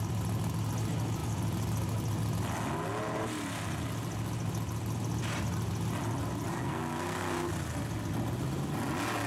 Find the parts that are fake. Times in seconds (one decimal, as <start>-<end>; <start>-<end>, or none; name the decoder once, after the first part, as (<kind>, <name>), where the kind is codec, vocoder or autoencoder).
6.5-7.5 (codec, SNAC)